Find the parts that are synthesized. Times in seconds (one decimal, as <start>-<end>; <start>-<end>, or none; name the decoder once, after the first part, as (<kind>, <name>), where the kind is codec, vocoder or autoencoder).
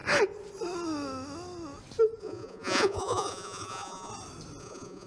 2.2-4.1 (vocoder, Vocos); 4.6-5.1